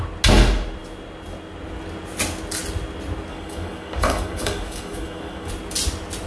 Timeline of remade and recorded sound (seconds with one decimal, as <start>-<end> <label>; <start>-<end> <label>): 0.0-3.3 recorded; 3.3-5.5 remade; 5.5-6.3 recorded